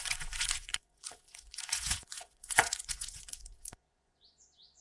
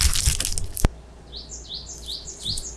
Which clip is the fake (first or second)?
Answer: first